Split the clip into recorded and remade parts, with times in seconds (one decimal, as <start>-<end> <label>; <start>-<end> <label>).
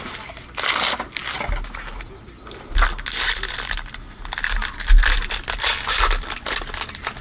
0.0-7.2 recorded